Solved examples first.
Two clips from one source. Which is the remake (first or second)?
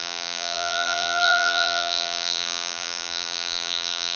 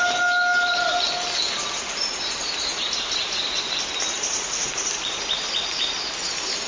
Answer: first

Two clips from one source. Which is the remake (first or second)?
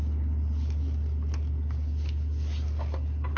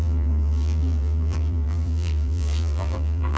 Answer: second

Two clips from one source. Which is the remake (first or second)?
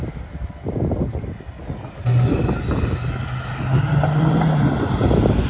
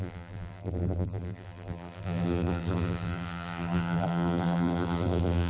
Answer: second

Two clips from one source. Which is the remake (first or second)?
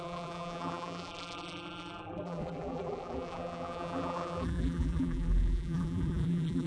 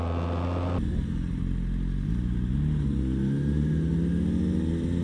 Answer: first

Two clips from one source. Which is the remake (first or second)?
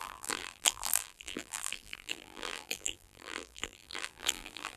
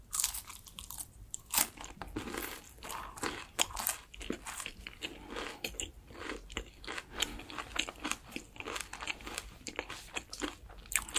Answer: first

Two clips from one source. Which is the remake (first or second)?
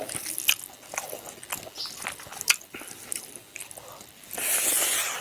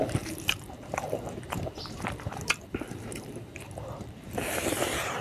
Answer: second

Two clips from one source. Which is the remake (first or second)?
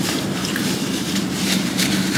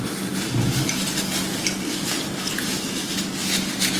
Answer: first